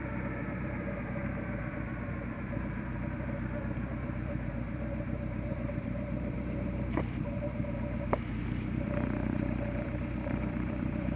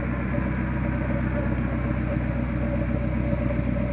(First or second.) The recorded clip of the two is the second